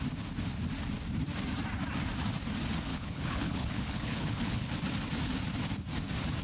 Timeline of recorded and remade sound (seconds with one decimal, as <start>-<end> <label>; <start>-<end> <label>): 0.0-2.9 recorded; 2.9-4.7 remade; 4.7-6.4 recorded